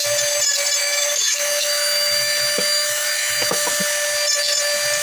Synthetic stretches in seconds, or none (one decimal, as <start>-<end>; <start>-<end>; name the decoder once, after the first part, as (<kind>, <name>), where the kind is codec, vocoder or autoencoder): 0.8-3.7 (autoencoder, DAC-VAE)